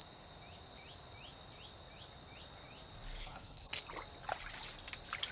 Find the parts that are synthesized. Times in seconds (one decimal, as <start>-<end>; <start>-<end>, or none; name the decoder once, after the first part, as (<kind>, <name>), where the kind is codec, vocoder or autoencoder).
3.2-3.7 (codec, HILCodec)